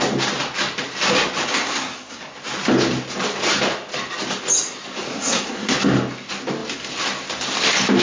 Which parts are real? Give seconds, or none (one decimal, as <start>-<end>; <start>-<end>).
0.0-1.5; 2.2-5.1; 5.7-8.0